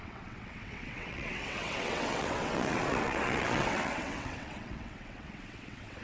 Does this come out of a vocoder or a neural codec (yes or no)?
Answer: yes